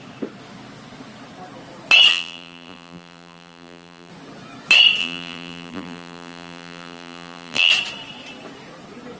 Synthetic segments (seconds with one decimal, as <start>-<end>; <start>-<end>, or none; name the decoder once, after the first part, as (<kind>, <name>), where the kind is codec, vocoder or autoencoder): 2.1-4.1 (vocoder, BigVGAN v2); 5.0-7.7